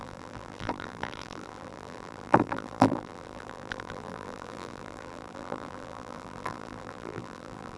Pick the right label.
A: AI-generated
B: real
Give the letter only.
A